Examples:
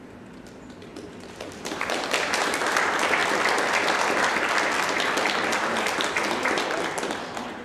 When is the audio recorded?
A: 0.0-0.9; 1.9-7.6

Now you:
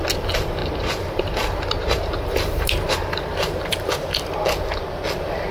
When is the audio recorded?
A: 0.0-0.6; 3.9-5.5

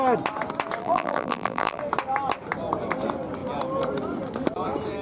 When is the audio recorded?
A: 0.0-0.8; 1.8-5.0

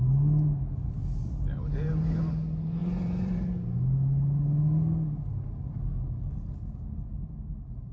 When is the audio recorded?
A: 0.0-2.8; 3.5-7.9